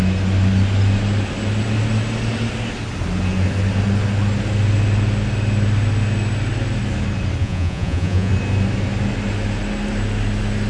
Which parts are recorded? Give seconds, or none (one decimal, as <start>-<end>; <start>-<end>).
0.0-7.4; 8.3-10.7

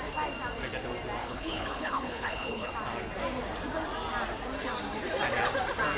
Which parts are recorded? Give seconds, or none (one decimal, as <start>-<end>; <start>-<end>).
0.0-1.2; 2.7-6.0